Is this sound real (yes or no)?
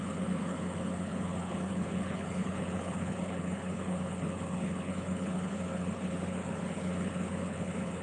no